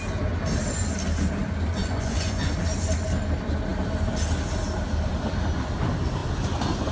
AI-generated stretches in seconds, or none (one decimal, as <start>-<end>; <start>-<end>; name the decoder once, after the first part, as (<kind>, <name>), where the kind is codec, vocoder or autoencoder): 1.8-2.5 (vocoder, Vocos)